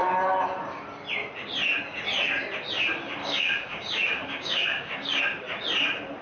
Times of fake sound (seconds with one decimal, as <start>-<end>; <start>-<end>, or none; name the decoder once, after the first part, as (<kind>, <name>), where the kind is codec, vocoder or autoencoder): 3.2-5.2 (codec, DAC)